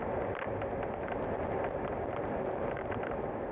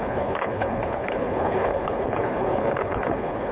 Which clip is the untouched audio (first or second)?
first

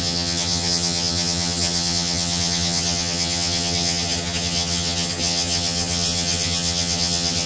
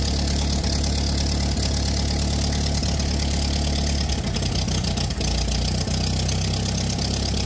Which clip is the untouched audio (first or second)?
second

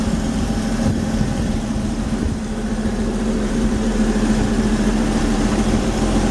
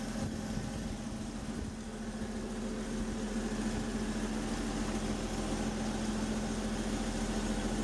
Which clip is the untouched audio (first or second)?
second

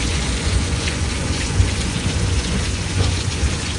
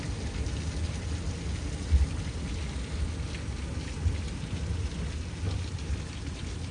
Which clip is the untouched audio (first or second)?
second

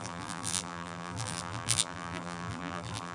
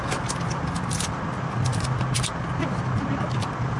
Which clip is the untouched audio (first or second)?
second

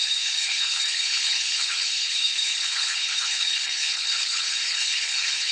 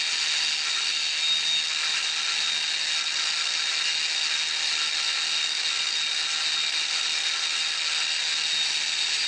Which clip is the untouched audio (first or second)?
second